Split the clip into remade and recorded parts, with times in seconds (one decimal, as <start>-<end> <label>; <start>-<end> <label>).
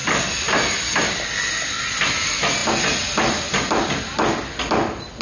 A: 0.0-5.2 recorded